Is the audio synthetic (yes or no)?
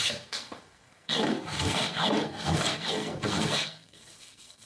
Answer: yes